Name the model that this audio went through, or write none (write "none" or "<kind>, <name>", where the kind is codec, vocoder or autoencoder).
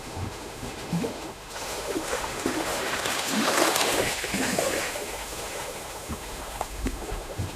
autoencoder, DAC-VAE